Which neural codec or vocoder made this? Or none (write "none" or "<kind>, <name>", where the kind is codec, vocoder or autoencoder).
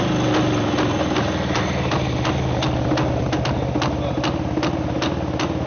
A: none